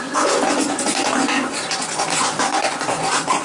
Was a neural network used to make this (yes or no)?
yes